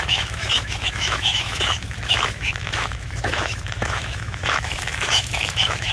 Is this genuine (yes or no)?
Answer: no